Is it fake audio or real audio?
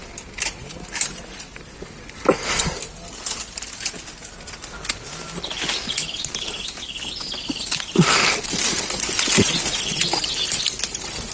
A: real